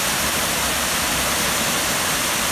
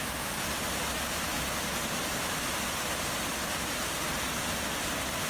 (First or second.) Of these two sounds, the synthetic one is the first